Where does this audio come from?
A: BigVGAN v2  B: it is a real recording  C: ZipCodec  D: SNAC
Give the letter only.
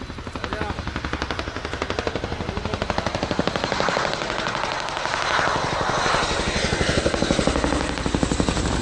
B